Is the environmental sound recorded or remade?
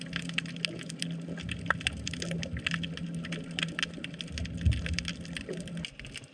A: recorded